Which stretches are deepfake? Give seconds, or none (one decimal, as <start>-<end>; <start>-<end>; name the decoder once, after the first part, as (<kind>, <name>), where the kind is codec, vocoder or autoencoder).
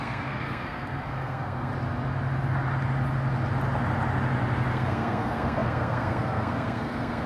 0.0-1.7 (codec, SNAC); 4.7-7.3